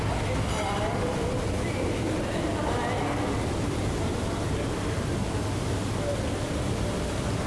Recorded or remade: recorded